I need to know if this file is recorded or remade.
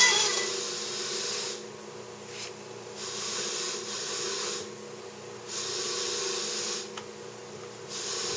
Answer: recorded